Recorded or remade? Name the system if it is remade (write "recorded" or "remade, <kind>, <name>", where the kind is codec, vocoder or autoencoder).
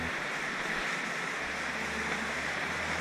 recorded